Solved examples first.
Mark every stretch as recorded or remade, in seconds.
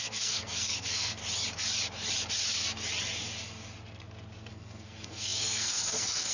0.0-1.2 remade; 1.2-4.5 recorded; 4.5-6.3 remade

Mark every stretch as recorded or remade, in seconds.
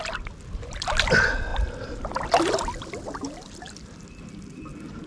0.0-5.1 recorded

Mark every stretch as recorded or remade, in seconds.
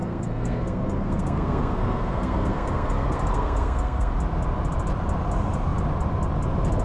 0.0-4.1 remade; 4.1-6.8 recorded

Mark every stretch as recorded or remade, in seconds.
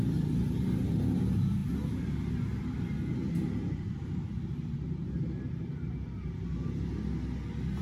0.0-7.8 recorded